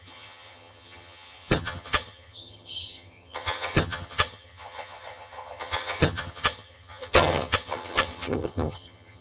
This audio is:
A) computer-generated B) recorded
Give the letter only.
A